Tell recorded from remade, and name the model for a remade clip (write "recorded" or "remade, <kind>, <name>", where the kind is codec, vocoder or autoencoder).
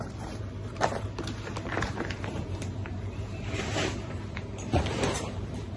remade, vocoder, BigVGAN v2